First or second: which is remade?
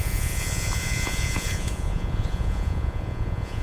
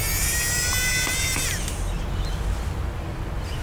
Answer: first